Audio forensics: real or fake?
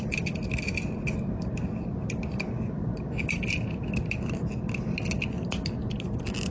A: real